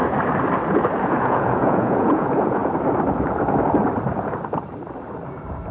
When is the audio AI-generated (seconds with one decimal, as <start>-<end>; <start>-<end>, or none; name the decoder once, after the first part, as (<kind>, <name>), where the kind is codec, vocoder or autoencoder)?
1.0-2.6 (vocoder, Vocos)